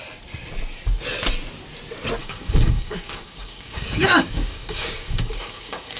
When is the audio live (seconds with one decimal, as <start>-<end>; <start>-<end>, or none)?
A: 0.0-2.2